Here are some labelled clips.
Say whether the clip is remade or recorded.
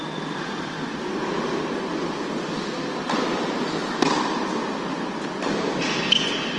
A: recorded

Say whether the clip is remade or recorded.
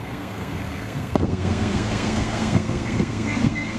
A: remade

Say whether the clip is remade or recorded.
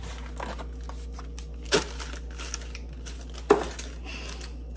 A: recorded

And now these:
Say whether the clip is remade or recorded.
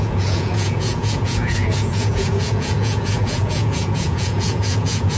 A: remade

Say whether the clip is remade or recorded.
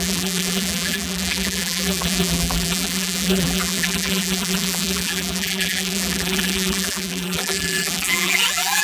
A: remade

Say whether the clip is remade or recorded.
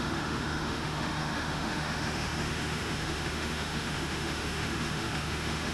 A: remade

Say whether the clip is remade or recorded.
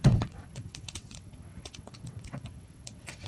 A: remade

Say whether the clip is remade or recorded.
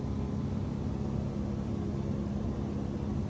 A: recorded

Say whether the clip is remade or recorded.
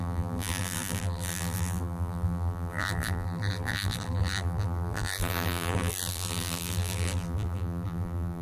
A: remade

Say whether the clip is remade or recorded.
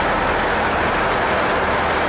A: recorded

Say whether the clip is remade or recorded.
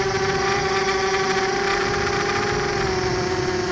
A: recorded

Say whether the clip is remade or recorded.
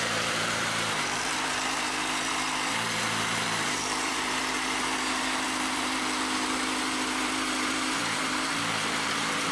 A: remade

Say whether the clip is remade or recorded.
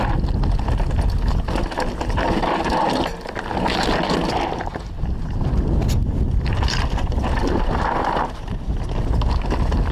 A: recorded